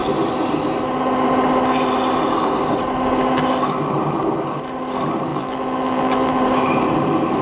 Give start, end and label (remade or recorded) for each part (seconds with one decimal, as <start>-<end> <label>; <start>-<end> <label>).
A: 0.0-5.3 recorded; 5.3-6.4 remade; 6.4-7.4 recorded

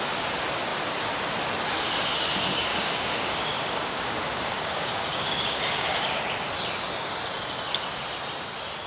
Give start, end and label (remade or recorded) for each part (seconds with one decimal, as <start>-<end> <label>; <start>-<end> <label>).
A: 0.0-2.7 recorded; 2.7-6.2 remade; 6.2-8.9 recorded